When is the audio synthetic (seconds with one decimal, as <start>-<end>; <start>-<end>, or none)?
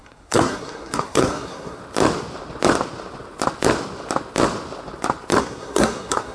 0.0-1.8; 5.4-6.3